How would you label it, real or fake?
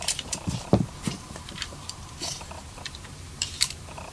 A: fake